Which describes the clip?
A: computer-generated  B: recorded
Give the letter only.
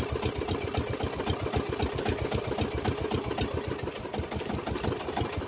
B